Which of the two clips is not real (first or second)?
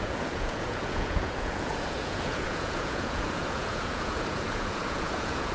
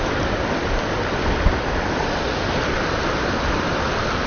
first